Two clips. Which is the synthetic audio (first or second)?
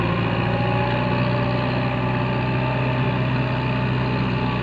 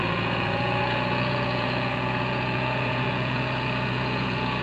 second